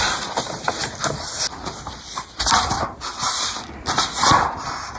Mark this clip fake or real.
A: real